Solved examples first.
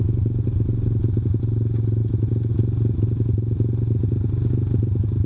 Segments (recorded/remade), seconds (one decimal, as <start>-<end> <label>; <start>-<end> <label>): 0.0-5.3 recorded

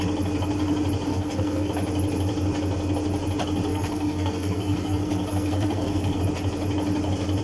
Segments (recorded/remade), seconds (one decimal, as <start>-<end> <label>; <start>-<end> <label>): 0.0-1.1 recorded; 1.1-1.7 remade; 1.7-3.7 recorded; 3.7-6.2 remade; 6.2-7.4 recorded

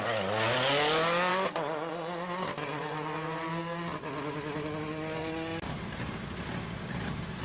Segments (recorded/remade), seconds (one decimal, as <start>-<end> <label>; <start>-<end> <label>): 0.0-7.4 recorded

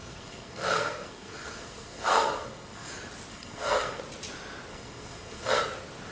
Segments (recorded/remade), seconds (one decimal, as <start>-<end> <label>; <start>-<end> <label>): 0.0-2.9 remade; 2.9-3.3 recorded; 3.3-4.0 remade; 4.0-4.7 recorded; 4.7-5.6 remade; 5.6-6.1 recorded

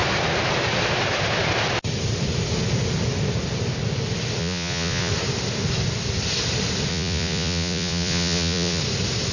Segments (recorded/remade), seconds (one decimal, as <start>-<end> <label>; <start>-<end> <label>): 0.0-4.4 recorded; 4.4-5.1 remade; 5.1-6.9 recorded; 6.9-8.8 remade; 8.8-9.3 recorded

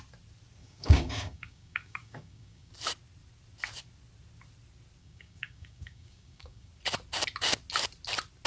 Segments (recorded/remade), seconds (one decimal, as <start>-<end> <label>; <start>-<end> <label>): 0.0-0.6 recorded; 0.6-2.7 remade; 2.7-5.0 recorded; 5.0-6.7 remade; 6.7-8.5 recorded

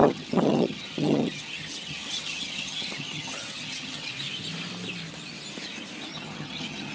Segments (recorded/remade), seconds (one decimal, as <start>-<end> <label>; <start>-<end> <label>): 0.0-4.1 remade; 4.1-6.1 recorded; 6.1-6.9 remade

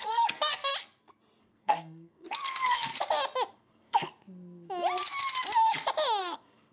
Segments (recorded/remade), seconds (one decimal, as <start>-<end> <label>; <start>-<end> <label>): 0.0-0.7 remade; 0.7-1.4 recorded; 1.4-2.9 remade; 2.9-3.5 recorded; 3.5-4.1 remade; 4.1-6.2 recorded; 6.2-6.7 remade